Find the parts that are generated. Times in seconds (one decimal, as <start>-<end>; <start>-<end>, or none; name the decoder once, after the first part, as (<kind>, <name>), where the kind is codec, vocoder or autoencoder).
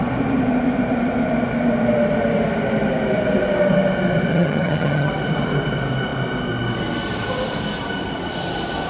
4.3-5.1 (vocoder, HiFi-GAN)